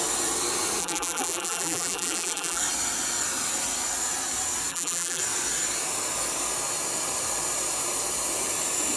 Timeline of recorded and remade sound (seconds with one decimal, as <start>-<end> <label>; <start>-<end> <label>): 0.0-0.8 recorded; 0.8-2.6 remade; 2.6-4.7 recorded; 4.7-5.2 remade; 5.2-9.0 recorded